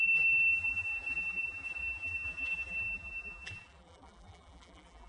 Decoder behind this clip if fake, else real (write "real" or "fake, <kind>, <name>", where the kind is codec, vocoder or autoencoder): fake, vocoder, BigVGAN v2